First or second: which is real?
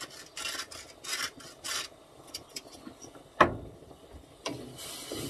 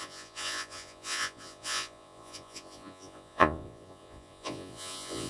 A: first